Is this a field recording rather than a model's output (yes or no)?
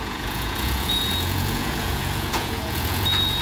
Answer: no